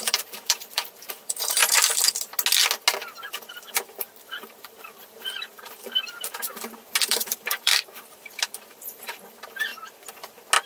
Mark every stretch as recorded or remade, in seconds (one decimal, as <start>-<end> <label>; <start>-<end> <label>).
0.0-1.6 remade; 1.6-3.5 recorded; 3.5-6.5 remade; 6.5-7.1 recorded; 7.1-9.7 remade; 9.7-10.7 recorded